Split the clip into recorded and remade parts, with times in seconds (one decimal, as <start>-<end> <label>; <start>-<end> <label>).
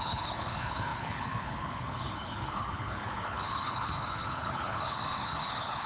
0.0-5.9 remade